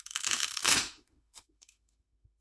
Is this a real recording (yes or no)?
no